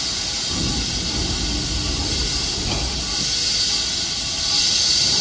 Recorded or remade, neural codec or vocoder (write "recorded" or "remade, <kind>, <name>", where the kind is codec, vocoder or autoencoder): recorded